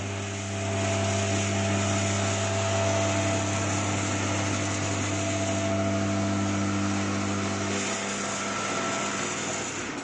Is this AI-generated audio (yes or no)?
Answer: no